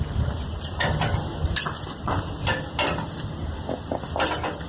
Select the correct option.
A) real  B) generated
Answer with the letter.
A